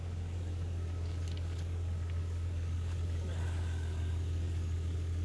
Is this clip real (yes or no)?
no